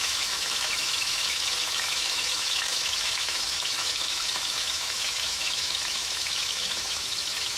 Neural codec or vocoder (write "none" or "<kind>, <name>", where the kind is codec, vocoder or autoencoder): autoencoder, DAC-VAE